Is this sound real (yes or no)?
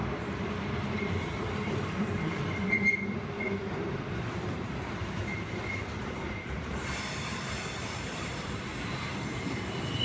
no